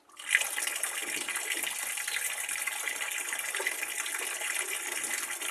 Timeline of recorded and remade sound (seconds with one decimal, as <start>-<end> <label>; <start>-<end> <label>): 0.0-5.5 recorded